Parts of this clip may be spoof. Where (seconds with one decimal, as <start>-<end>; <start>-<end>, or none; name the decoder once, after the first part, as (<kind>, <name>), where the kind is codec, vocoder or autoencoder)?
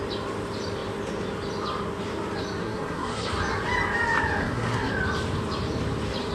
2.6-3.3 (codec, SNAC); 4.4-4.9